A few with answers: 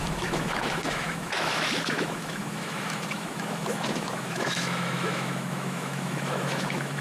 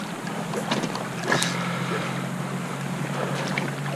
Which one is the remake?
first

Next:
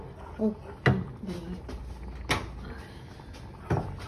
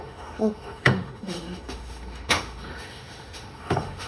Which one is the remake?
second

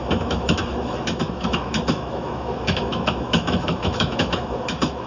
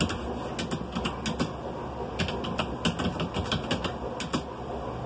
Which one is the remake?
first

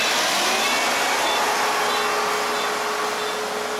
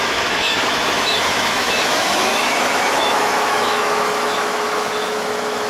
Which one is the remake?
second